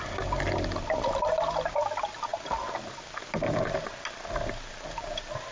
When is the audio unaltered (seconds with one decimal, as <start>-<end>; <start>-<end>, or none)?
0.0-5.5